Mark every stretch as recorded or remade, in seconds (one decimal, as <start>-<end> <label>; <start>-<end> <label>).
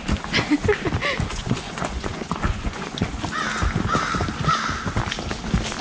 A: 0.0-1.3 recorded; 1.3-3.1 remade; 3.1-5.8 recorded